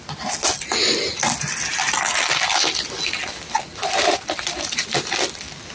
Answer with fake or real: real